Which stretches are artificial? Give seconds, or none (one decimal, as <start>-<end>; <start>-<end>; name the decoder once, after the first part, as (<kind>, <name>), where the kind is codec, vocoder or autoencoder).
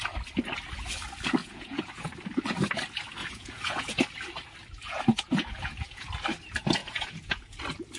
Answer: 1.4-2.1 (vocoder, Vocos); 3.2-4.0; 4.8-6.1; 6.8-7.6